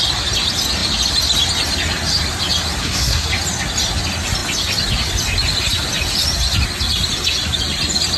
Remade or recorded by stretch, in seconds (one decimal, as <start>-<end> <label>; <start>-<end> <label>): 0.0-2.8 recorded; 2.8-3.3 remade; 3.3-8.2 recorded